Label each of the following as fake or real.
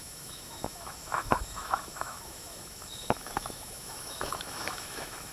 fake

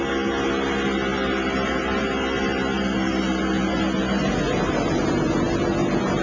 real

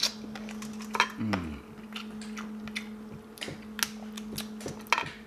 real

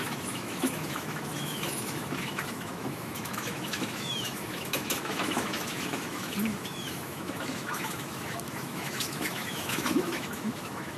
fake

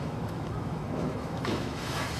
fake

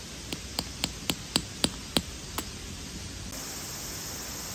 real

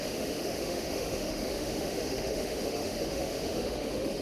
fake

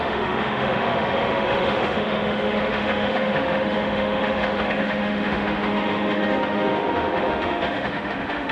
fake